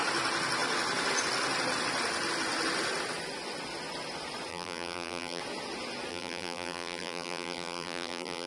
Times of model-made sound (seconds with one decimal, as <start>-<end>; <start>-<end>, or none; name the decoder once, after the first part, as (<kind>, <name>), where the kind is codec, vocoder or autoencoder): 4.5-5.4 (vocoder, BigVGAN v2); 6.1-8.5